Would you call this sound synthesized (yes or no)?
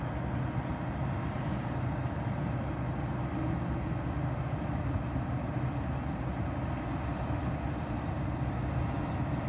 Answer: no